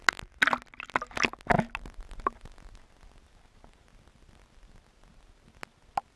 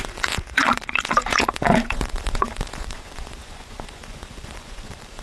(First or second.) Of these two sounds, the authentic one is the first